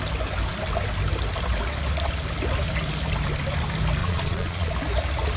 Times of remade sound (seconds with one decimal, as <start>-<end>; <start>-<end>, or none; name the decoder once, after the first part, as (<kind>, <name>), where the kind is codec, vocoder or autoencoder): 4.0-4.7 (vocoder, Vocos)